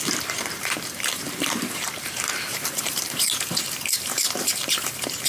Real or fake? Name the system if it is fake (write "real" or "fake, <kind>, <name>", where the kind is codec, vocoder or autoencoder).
fake, vocoder, BigVGAN v2